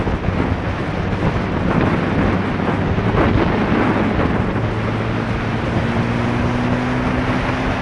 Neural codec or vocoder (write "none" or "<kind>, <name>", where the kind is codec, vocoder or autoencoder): none